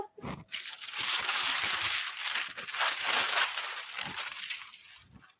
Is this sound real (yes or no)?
no